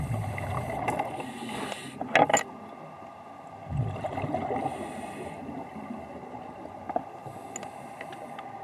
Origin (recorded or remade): recorded